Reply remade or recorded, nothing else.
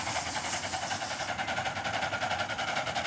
recorded